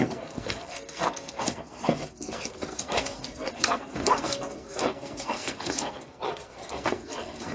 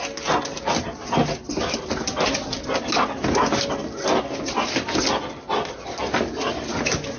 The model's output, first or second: first